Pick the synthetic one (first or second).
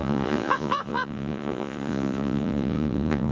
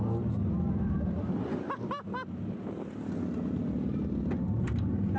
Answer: first